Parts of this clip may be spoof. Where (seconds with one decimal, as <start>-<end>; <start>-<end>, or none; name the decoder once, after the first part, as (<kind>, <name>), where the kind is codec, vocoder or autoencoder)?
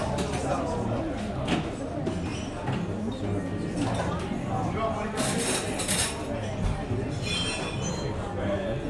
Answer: none